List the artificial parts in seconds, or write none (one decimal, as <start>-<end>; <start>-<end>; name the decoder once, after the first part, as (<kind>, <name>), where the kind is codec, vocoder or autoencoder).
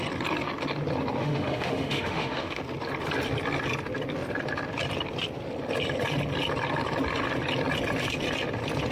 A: 1.2-2.6 (autoencoder, DAC-VAE)